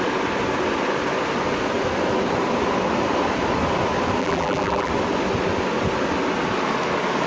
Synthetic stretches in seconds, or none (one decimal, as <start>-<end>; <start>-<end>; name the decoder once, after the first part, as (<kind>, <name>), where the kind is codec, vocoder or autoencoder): 4.2-4.9 (vocoder, BigVGAN v2)